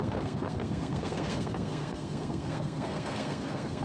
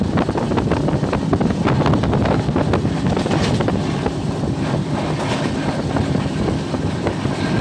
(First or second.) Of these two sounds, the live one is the second